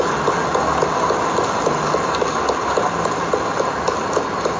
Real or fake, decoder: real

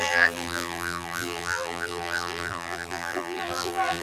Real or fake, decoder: fake, vocoder, BigVGAN v2